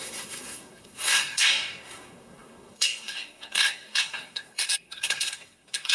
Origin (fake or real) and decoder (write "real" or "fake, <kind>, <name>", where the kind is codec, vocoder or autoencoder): fake, codec, SNAC